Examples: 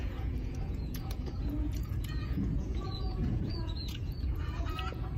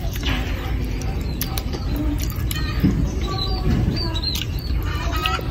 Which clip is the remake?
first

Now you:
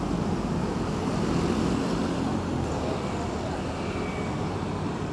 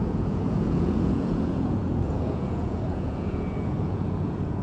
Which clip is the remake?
second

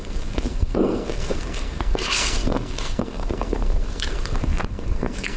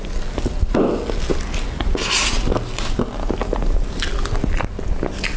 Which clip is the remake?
first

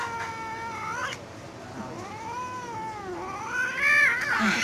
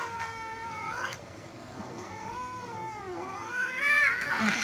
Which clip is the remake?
second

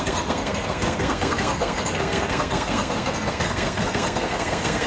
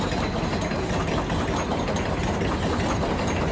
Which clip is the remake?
first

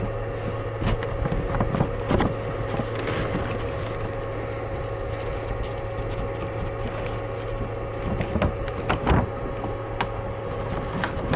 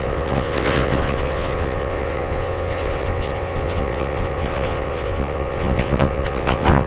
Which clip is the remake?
second